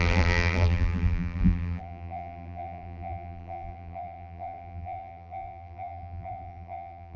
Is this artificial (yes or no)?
yes